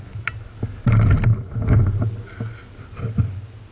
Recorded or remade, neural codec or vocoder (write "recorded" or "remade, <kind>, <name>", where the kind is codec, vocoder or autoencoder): recorded